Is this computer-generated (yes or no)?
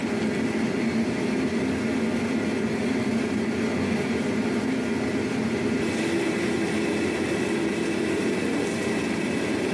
no